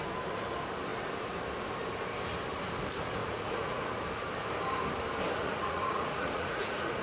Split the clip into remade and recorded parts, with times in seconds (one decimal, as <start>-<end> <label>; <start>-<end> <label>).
0.0-3.2 recorded; 3.2-3.8 remade; 3.8-5.4 recorded; 5.4-7.0 remade

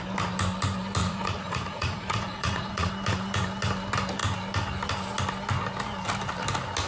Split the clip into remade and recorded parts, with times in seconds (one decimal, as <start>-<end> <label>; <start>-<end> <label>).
0.0-1.0 recorded; 1.0-2.9 remade; 2.9-6.9 recorded

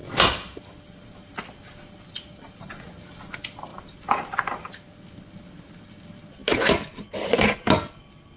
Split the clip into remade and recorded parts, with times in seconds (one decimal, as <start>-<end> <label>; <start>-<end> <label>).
0.0-8.4 recorded

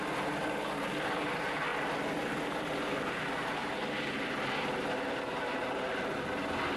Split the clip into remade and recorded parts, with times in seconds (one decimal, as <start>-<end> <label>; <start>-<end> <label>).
0.0-6.8 recorded

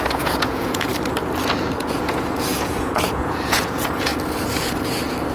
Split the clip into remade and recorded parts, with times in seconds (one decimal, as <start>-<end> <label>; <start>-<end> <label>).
0.0-0.9 remade; 0.9-1.8 recorded; 1.8-4.1 remade; 4.1-5.3 recorded

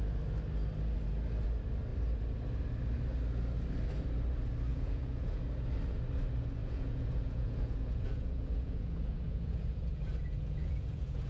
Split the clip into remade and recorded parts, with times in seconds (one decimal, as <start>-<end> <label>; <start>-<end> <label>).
0.0-4.7 recorded; 4.7-5.4 remade; 5.4-6.6 recorded; 6.6-11.3 remade

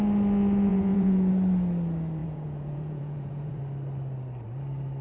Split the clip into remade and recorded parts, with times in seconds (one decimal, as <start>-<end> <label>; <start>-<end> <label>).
0.0-0.7 recorded; 0.7-1.3 remade; 1.3-2.2 recorded; 2.2-3.6 remade; 3.6-5.0 recorded